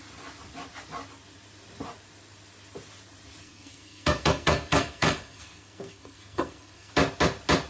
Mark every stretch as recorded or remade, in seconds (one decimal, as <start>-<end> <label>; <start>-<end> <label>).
0.0-3.4 recorded; 3.4-6.9 remade; 6.9-7.7 recorded